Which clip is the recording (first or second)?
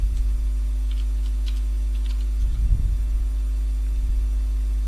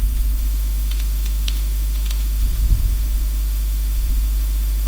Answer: first